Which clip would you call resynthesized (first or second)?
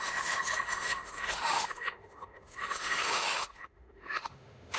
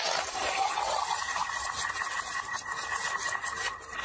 first